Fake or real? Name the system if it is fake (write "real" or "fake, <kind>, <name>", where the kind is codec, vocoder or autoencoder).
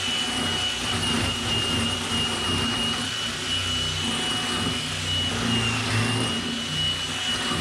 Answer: real